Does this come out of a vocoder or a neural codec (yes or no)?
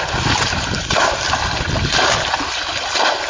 no